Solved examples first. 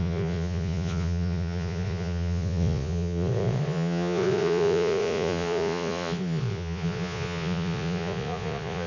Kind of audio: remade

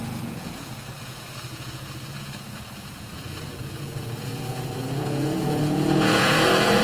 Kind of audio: remade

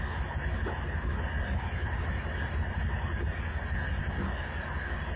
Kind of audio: recorded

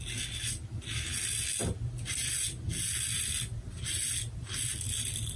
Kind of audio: recorded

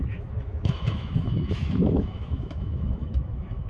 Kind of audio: remade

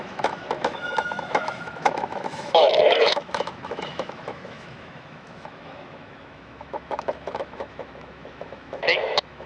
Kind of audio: remade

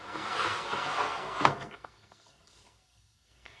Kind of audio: remade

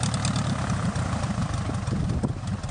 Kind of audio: recorded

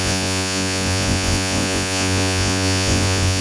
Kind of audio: remade